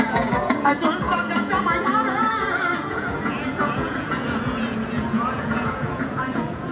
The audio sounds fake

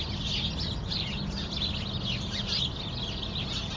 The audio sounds real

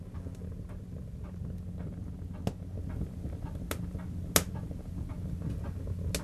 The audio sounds real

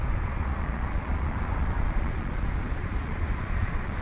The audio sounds fake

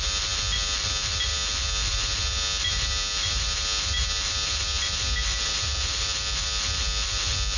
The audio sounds real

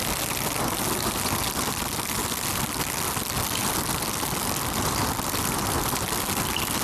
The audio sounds real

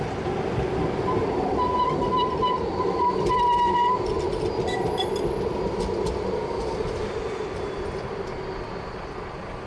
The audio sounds real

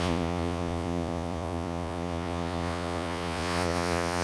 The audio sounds fake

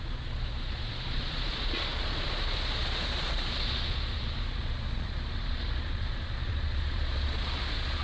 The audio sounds fake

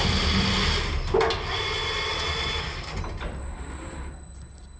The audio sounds real